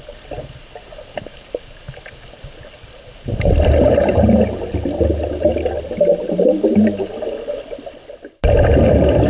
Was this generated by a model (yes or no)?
no